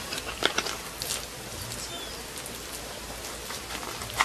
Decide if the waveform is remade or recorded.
recorded